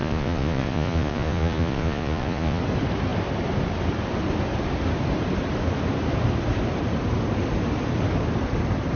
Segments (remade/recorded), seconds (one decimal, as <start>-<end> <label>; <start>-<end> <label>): 0.0-2.6 remade; 2.6-9.0 recorded